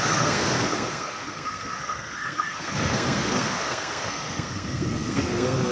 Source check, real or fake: fake